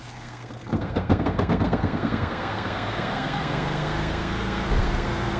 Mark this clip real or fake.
fake